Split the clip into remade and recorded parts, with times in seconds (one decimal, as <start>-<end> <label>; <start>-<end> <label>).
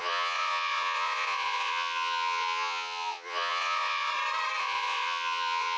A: 0.0-4.1 remade; 4.1-4.6 recorded; 4.6-5.8 remade